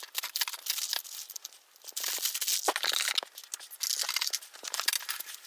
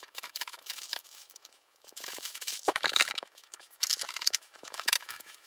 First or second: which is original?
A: first